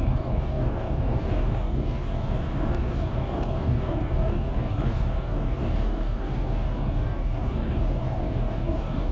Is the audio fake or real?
fake